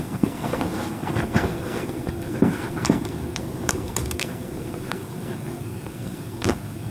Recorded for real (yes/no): no